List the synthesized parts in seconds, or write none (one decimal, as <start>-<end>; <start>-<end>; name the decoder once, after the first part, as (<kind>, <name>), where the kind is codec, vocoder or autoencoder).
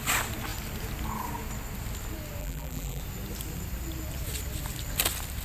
2.4-3.0 (vocoder, BigVGAN v2)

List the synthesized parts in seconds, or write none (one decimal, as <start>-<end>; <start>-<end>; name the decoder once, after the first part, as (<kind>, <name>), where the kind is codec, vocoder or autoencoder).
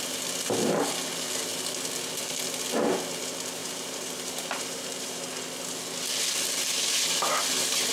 3.6-5.2 (vocoder, BigVGAN v2)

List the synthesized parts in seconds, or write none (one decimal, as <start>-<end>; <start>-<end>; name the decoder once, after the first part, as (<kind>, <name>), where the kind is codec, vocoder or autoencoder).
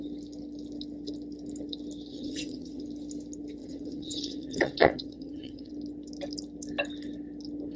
2.1-2.8 (vocoder, WaveNeXt); 3.6-5.7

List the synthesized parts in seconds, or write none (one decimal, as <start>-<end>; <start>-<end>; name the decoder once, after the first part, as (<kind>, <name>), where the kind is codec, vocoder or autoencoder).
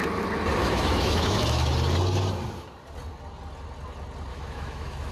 0.6-1.7 (autoencoder, DAC-VAE); 4.3-5.1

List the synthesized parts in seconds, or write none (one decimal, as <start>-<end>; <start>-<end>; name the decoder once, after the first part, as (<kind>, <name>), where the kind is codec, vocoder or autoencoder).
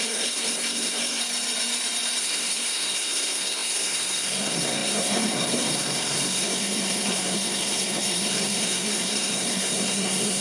0.0-1.2 (codec, SNAC); 2.2-10.4